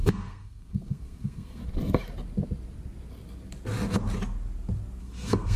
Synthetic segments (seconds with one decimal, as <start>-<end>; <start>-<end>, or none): 0.0-1.6; 5.0-5.6